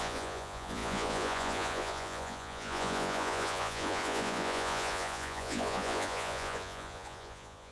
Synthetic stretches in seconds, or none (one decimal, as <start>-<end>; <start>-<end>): 0.0-7.7